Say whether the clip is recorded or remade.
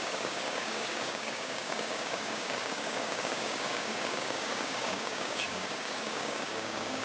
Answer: remade